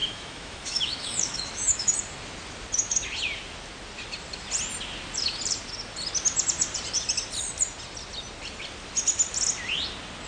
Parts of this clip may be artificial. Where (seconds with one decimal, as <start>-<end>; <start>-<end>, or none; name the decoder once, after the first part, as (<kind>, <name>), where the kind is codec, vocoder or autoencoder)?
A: 0.0-1.9 (autoencoder, DAC-VAE)